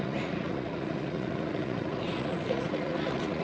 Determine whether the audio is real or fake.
fake